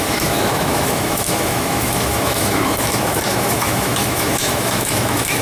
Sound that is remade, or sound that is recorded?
remade